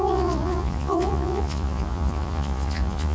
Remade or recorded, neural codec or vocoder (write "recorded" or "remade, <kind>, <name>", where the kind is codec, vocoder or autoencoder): remade, vocoder, Vocos